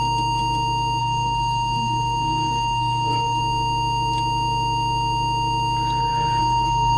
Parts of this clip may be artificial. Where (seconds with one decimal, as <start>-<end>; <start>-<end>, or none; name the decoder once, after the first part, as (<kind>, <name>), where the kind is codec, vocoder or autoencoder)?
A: 1.0-3.4 (codec, SNAC); 6.0-7.0